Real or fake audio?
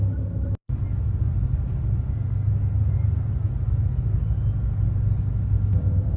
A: real